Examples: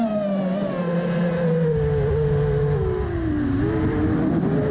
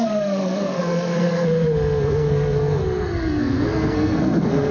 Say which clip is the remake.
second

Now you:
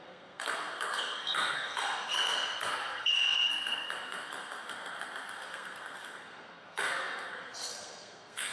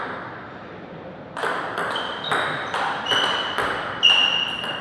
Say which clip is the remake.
first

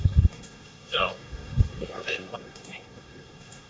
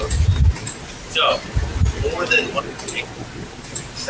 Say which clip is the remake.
first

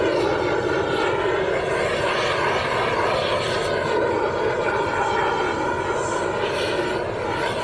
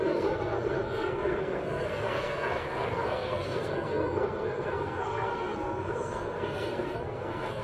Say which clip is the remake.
second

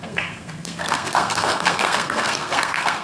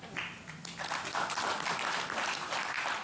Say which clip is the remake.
first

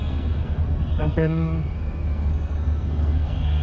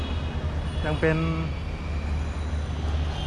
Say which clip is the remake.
first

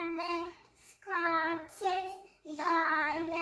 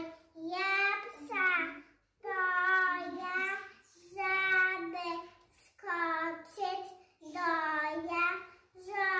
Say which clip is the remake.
first